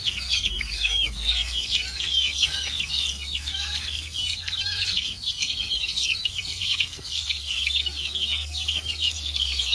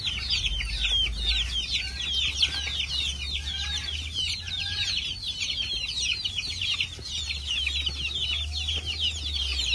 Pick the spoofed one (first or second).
first